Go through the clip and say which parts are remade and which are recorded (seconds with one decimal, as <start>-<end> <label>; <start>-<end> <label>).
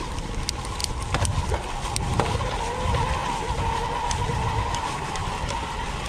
0.0-3.2 recorded; 3.2-5.5 remade; 5.5-6.1 recorded